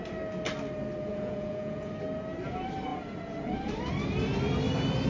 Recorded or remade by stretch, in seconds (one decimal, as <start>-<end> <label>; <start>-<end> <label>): 0.0-1.1 recorded; 1.1-1.9 remade; 1.9-5.1 recorded